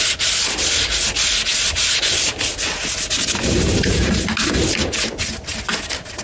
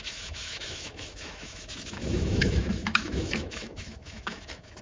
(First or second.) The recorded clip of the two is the first